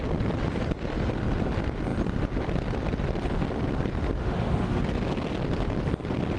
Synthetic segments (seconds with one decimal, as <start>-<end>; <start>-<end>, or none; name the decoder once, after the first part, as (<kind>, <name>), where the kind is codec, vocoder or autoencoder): 4.2-4.8 (autoencoder, DAC-VAE)